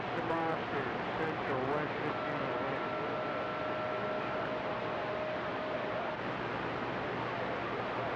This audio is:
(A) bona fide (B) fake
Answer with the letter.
A